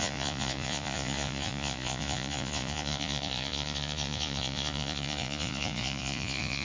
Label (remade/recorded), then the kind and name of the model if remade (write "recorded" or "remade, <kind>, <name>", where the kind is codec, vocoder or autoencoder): remade, vocoder, Vocos